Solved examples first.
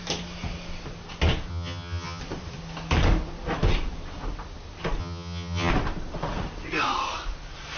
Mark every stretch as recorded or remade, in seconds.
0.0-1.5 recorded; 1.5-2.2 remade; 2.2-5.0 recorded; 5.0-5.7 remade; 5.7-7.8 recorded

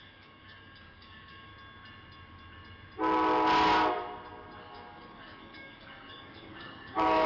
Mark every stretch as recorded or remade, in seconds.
0.0-1.5 remade; 1.5-4.6 recorded; 4.6-7.3 remade

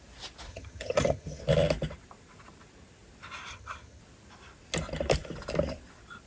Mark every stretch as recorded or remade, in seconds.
0.0-0.5 recorded; 0.5-1.4 remade; 1.4-3.5 recorded; 3.5-4.0 remade; 4.0-6.3 recorded